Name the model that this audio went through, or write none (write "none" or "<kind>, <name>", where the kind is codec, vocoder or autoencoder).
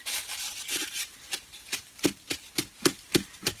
none